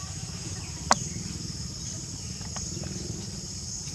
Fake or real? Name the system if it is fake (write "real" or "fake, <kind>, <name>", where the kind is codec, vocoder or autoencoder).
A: fake, vocoder, BigVGAN v2